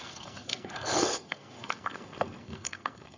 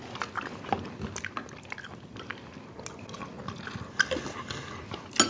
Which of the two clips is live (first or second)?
second